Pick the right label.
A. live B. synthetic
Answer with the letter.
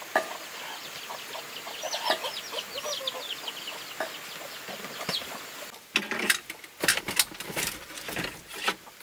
A